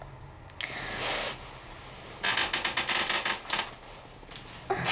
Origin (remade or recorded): recorded